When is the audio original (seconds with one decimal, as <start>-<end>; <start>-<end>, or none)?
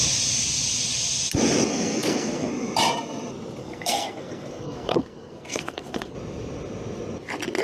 0.0-1.7; 2.5-3.6; 6.1-7.6